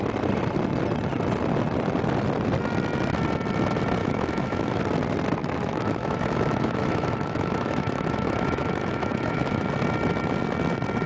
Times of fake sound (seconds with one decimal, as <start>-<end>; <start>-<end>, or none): 4.0-4.8; 5.4-9.7